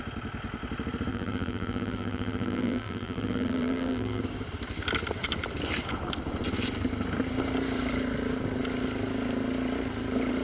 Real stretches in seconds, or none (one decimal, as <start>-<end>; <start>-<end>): 0.0-1.1; 4.2-10.4